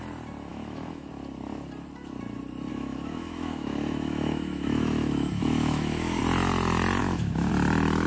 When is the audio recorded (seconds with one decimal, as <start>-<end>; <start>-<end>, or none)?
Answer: 0.0-0.5; 1.1-2.7; 6.2-7.0; 7.5-8.1